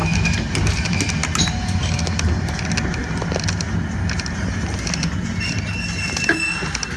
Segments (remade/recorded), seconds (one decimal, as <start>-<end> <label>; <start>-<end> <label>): 0.0-7.0 recorded